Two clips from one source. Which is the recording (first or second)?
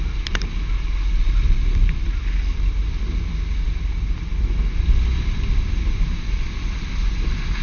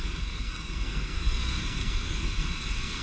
first